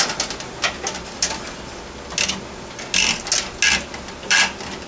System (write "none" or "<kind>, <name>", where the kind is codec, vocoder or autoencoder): none